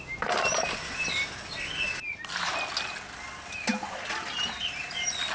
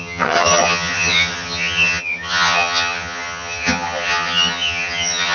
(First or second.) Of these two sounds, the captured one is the first